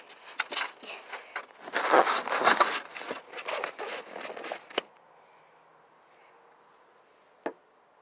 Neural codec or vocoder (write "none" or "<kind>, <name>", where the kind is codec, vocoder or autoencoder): none